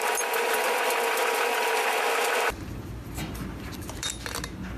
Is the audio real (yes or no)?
yes